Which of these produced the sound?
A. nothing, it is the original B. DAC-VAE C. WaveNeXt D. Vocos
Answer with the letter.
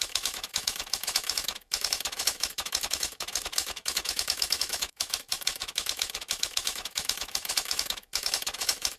B